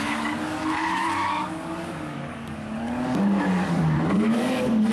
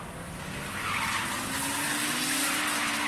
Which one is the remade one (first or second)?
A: first